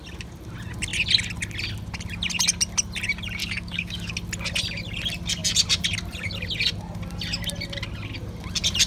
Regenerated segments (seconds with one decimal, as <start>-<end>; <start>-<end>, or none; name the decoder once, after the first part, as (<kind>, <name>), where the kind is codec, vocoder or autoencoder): 3.4-4.1 (codec, DAC)